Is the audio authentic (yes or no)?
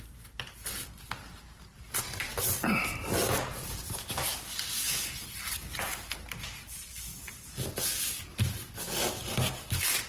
yes